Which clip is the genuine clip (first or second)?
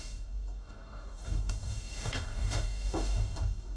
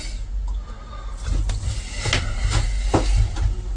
second